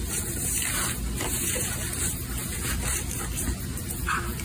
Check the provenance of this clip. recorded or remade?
remade